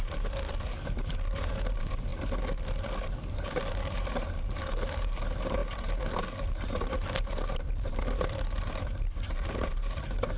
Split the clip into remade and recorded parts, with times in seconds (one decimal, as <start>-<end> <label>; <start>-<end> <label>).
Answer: 0.0-2.1 remade; 2.1-3.7 recorded; 3.7-10.4 remade